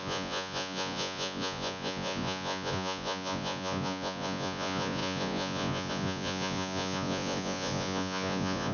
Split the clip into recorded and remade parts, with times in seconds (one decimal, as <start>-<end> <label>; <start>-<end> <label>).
0.0-8.7 remade